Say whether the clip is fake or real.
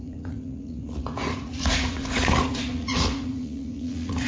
fake